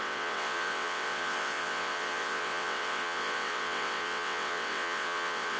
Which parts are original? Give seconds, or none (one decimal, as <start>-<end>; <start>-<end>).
none